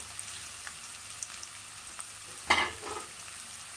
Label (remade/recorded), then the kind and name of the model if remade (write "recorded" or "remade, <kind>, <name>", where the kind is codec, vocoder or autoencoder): recorded